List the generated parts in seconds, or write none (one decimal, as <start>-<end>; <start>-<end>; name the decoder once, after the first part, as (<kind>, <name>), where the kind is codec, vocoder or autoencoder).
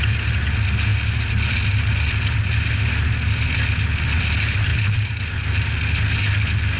4.7-5.2 (codec, DAC)